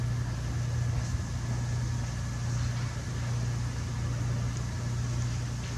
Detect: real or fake real